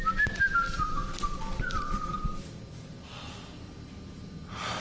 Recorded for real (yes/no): yes